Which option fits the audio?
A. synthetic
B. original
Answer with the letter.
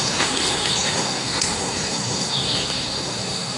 A